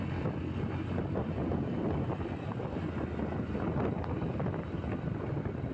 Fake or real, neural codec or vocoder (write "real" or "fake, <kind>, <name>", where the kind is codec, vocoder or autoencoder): real